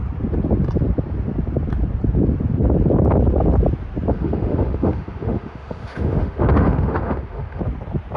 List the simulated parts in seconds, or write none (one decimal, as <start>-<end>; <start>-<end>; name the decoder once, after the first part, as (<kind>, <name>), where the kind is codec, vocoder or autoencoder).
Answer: 4.1-7.6 (autoencoder, DAC-VAE)